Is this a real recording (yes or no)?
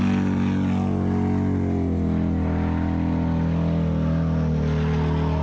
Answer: yes